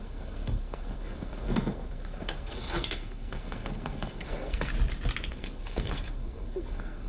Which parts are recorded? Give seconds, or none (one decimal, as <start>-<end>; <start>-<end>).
4.7-5.3